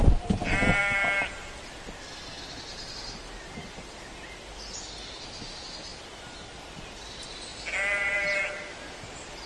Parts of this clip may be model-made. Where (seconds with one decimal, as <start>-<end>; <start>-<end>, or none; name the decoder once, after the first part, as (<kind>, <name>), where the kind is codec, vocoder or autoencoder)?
none